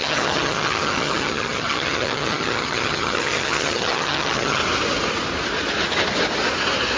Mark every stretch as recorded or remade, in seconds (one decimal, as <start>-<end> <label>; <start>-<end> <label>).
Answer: 0.0-4.6 remade; 4.6-7.0 recorded